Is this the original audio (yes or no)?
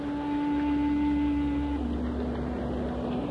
yes